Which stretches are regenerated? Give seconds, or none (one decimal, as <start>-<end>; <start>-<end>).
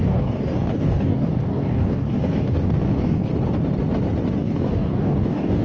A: 0.0-3.3; 4.4-5.6